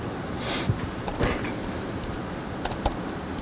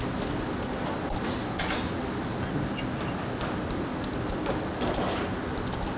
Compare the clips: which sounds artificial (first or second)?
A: first